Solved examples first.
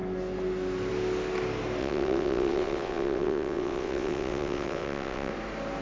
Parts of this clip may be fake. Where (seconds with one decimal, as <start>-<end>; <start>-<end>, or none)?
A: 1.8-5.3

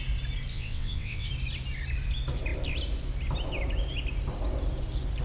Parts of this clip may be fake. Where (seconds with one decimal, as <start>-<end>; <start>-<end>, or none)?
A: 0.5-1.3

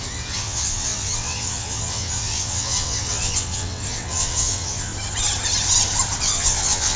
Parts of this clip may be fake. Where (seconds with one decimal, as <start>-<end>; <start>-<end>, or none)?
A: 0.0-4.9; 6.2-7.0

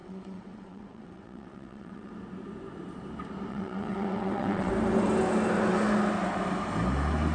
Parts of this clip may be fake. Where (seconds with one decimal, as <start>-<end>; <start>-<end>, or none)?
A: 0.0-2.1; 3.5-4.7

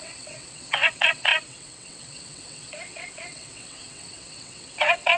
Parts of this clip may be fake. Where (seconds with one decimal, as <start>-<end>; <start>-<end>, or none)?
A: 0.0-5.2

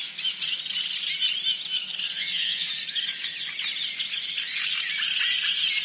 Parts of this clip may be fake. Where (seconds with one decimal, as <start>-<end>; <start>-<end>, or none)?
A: 2.1-2.7

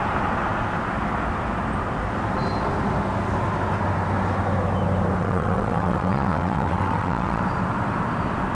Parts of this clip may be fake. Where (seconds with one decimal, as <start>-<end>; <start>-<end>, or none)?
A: 5.2-7.4